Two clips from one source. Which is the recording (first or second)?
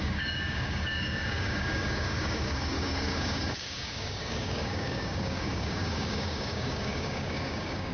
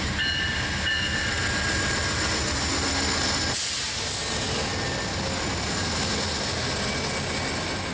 second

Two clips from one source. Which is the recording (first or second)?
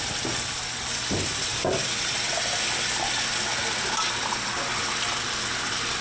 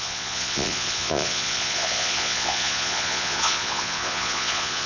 first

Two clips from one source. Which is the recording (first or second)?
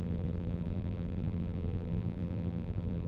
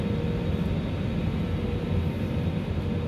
second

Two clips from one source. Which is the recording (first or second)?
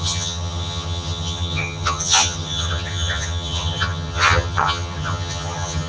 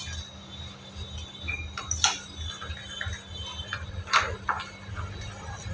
second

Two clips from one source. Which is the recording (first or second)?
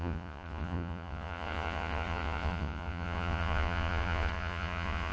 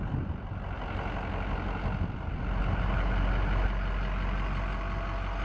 second